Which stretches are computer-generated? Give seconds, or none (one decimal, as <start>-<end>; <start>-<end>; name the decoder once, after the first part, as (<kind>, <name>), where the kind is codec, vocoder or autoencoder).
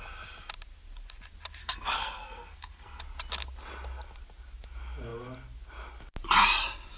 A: 1.6-3.0 (codec, SNAC)